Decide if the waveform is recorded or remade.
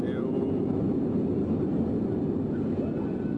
recorded